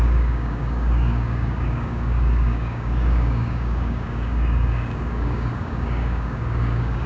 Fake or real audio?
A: fake